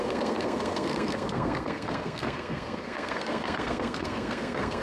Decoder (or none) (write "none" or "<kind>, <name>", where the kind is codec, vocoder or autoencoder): codec, SNAC